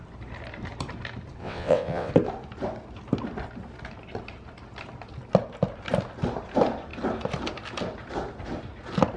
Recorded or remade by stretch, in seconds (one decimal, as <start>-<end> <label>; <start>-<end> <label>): 0.0-1.4 recorded; 1.4-2.1 remade; 2.1-9.2 recorded

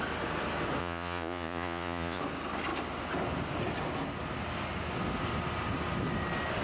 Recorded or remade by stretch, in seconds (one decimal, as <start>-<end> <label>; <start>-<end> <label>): 0.0-0.8 recorded; 0.8-2.2 remade; 2.2-6.6 recorded

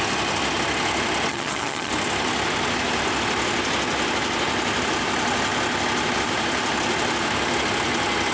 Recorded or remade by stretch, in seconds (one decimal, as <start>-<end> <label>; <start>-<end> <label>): 0.0-1.3 recorded; 1.3-1.9 remade; 1.9-8.3 recorded

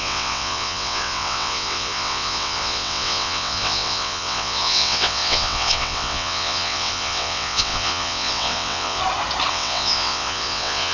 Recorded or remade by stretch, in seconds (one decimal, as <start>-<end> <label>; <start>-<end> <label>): 0.0-9.0 remade; 9.0-9.5 recorded; 9.5-10.9 remade

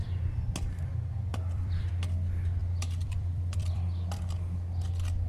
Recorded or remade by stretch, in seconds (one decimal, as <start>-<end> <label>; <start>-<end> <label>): 0.0-1.3 recorded; 1.3-1.9 remade; 1.9-2.6 recorded; 2.6-3.8 remade; 3.8-5.3 recorded

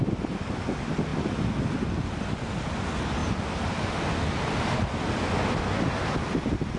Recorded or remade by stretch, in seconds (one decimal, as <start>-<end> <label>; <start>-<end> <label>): 0.0-6.8 recorded

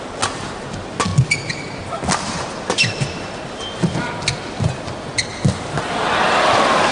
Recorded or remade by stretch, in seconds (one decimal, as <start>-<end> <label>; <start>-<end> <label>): 0.0-6.9 recorded

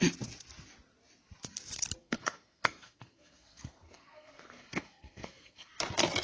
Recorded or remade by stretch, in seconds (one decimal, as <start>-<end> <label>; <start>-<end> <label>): 0.0-2.0 recorded; 2.0-5.7 remade; 5.7-6.2 recorded